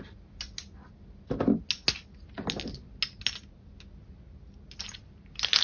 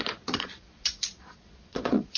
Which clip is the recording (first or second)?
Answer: first